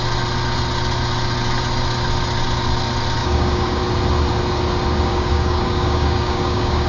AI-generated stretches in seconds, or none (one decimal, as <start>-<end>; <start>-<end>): 3.2-3.8; 5.1-6.9